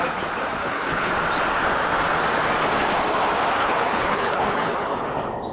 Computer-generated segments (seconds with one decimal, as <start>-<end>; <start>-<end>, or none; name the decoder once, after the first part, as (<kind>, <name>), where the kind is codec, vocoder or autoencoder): 0.6-1.1 (codec, HILCodec); 3.6-5.1